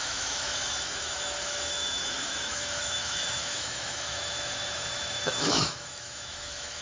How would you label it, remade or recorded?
remade